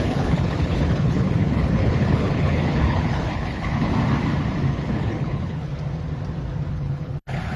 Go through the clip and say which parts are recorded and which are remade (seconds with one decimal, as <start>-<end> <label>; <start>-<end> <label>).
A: 0.0-3.9 remade; 3.9-4.7 recorded; 4.7-5.7 remade; 5.7-6.7 recorded; 6.7-7.6 remade